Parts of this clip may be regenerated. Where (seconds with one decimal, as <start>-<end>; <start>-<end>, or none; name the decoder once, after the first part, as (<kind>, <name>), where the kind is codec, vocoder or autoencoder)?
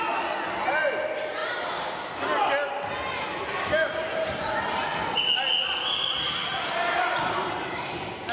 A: 4.9-5.4 (vocoder, BigVGAN v2); 6.4-7.8